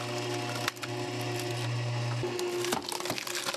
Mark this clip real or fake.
real